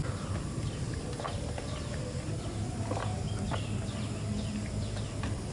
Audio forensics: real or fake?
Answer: real